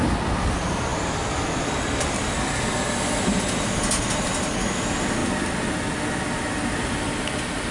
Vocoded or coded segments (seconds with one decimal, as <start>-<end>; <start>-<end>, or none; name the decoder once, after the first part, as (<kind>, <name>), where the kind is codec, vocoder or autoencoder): none